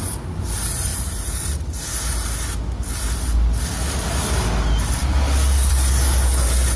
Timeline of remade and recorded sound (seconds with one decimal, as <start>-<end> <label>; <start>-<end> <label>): 0.0-0.9 recorded; 0.9-1.7 remade; 1.7-6.8 recorded